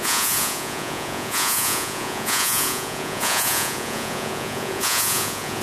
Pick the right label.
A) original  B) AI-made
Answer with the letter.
B